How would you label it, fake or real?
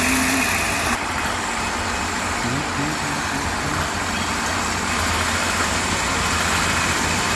real